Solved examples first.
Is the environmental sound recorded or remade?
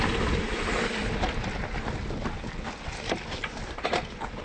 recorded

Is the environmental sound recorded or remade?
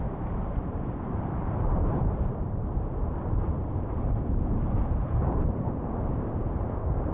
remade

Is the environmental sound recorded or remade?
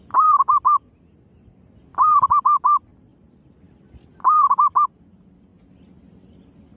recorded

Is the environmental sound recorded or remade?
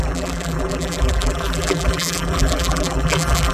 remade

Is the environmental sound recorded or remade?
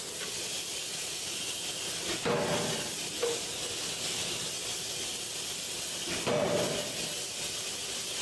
recorded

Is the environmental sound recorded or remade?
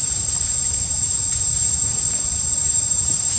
remade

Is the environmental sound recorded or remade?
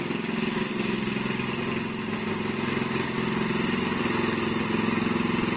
recorded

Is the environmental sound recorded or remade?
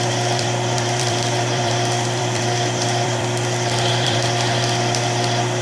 remade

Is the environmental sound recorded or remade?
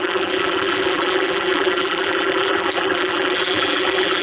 remade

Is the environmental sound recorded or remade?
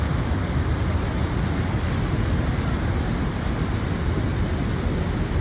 remade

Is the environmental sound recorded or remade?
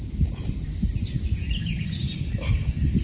recorded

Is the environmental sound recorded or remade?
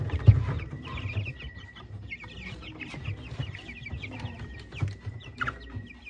recorded